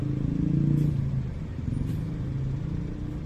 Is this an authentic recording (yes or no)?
yes